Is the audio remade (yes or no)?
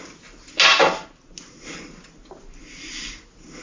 no